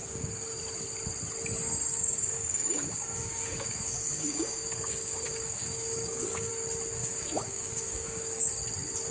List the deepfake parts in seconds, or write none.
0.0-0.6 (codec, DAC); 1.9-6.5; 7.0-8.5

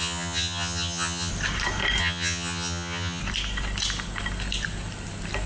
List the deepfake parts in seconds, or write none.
0.0-1.3 (vocoder, HiFi-GAN); 2.0-3.2

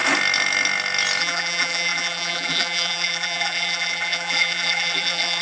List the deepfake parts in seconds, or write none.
1.2-5.4 (vocoder, BigVGAN v2)

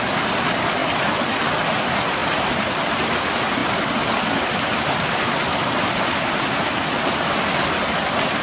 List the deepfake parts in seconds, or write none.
3.6-5.9 (vocoder, BigVGAN v2)

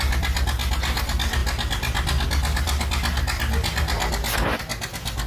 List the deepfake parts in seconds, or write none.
none

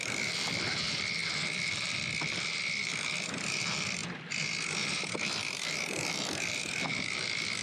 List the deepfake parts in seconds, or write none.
0.0-4.0 (vocoder, BigVGAN v2); 6.0-7.6

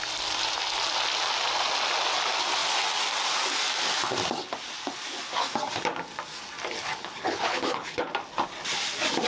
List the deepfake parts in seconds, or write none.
7.0-8.1 (codec, HILCodec)